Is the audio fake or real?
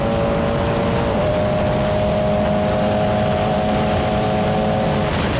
real